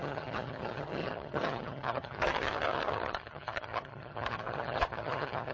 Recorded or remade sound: remade